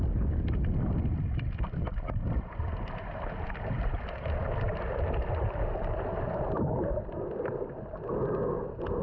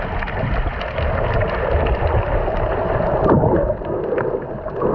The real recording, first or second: second